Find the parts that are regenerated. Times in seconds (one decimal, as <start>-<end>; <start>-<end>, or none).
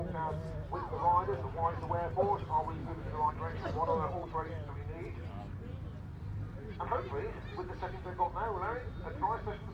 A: 2.8-3.3